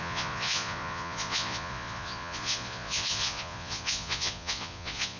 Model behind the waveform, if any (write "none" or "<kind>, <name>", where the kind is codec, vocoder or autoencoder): vocoder, Vocos